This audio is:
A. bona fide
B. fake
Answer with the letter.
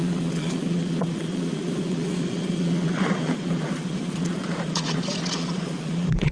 B